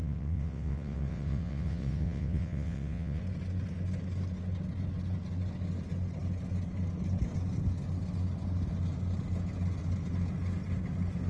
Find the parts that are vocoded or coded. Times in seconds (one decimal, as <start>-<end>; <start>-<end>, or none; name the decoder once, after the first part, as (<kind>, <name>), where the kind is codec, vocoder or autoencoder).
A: 0.0-3.2 (vocoder, WaveNeXt)